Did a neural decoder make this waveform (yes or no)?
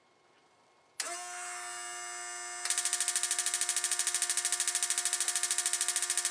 no